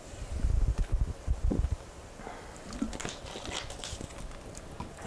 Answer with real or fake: real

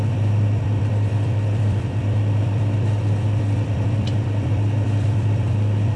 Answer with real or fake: fake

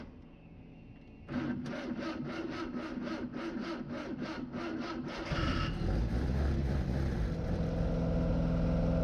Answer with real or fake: real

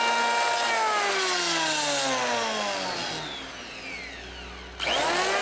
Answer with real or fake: real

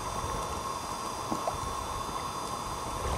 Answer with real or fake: real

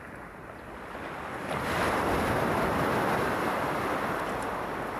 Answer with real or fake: real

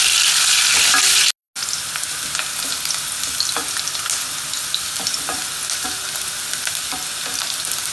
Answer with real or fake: real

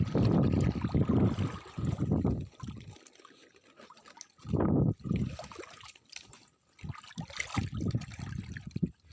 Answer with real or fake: real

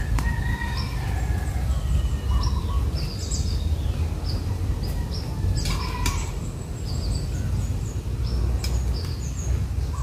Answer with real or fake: real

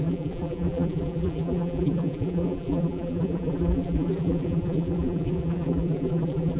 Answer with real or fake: fake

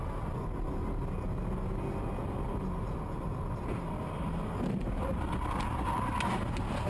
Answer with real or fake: real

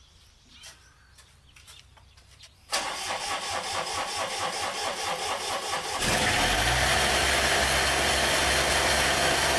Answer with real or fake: fake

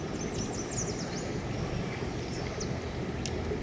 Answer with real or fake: real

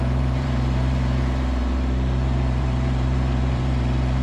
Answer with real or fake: fake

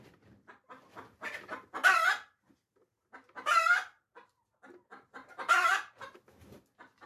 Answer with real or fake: real